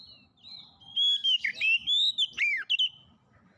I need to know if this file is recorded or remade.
recorded